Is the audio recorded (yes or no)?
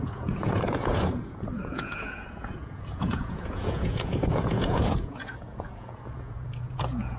no